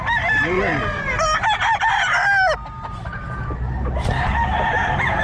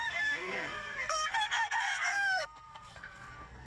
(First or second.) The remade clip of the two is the second